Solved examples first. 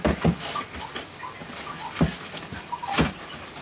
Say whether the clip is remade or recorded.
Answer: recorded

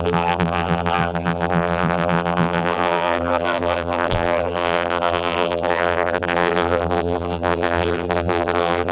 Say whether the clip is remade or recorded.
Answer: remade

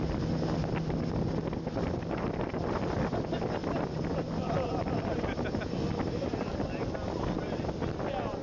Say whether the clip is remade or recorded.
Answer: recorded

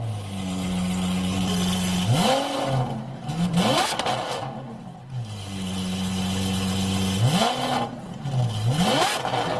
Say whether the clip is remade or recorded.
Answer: recorded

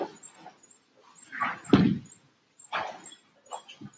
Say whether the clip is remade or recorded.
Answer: recorded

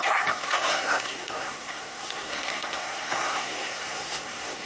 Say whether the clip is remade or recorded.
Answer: remade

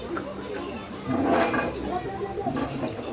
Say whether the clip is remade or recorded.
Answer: recorded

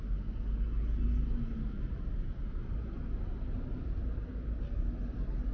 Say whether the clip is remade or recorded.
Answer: recorded